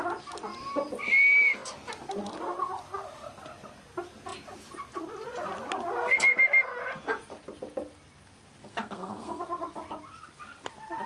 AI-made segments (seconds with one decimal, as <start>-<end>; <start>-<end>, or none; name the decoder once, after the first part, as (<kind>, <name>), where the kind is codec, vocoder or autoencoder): 8.6-9.4 (codec, SNAC)